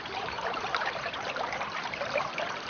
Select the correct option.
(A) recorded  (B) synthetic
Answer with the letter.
B